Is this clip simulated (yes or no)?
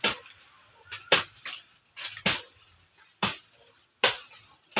no